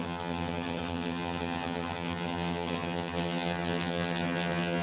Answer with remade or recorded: remade